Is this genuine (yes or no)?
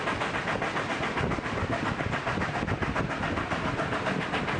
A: yes